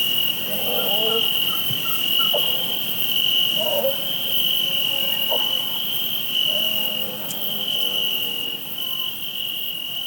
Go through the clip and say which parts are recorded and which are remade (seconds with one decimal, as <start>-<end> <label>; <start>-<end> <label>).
0.0-2.7 remade; 2.7-10.1 recorded